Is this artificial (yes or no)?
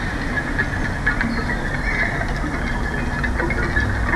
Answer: no